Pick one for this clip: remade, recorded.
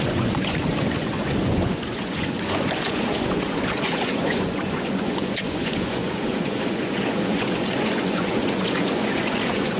remade